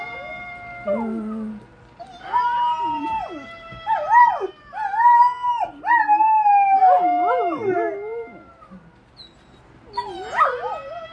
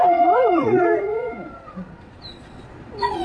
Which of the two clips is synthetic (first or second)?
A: second